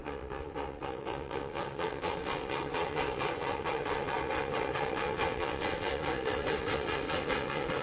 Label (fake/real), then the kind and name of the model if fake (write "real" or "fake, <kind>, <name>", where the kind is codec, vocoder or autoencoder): fake, vocoder, WaveNeXt